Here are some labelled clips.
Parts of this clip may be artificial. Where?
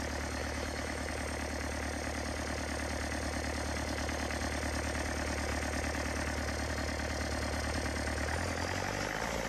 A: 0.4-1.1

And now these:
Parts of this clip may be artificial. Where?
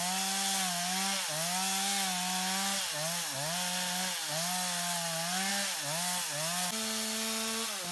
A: none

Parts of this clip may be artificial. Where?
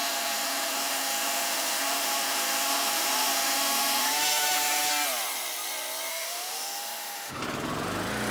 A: 0.0-4.9; 6.1-7.4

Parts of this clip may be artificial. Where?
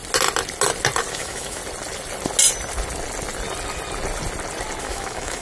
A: 1.1-1.6; 4.8-5.4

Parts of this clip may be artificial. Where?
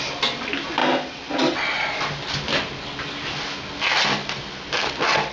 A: none